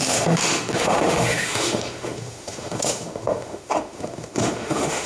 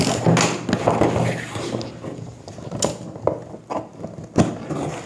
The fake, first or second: first